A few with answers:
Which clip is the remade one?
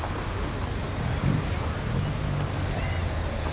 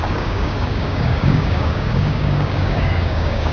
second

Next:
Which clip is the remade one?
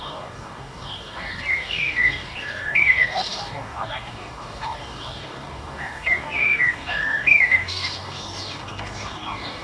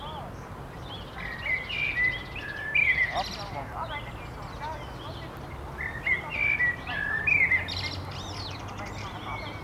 first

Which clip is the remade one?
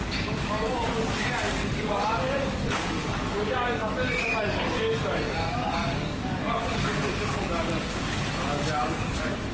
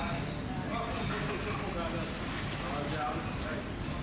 first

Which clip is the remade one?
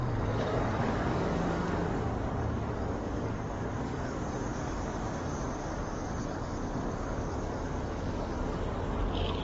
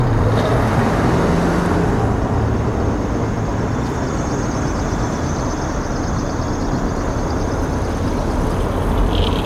first